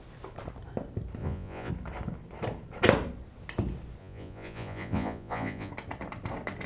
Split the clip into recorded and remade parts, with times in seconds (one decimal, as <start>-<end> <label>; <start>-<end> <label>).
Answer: 0.0-1.2 recorded; 1.2-1.7 remade; 1.7-4.0 recorded; 4.0-5.7 remade; 5.7-6.7 recorded